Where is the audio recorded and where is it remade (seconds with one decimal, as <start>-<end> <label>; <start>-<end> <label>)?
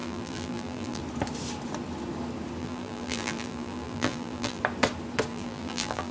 0.0-1.0 remade; 1.0-2.6 recorded; 2.6-4.6 remade; 4.6-5.3 recorded; 5.3-6.1 remade